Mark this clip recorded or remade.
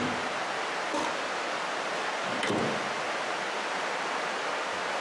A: recorded